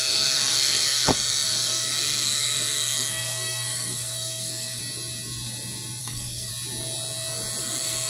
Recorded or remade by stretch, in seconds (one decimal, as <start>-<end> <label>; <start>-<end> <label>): 0.0-4.8 remade; 4.8-6.0 recorded; 6.0-6.5 remade; 6.5-7.6 recorded; 7.6-8.1 remade